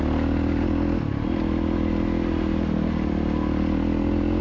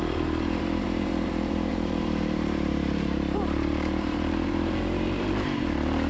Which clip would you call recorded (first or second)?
first